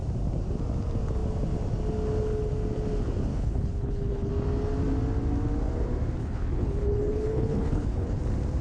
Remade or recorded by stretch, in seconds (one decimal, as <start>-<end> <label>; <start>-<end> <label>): 0.0-3.3 recorded; 3.3-4.3 remade; 4.3-6.2 recorded; 6.2-8.2 remade; 8.2-8.6 recorded